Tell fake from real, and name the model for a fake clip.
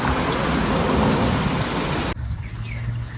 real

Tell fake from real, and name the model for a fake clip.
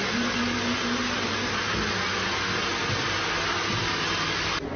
real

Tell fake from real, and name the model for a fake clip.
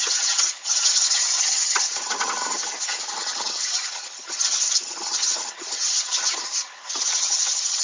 fake, vocoder, HiFi-GAN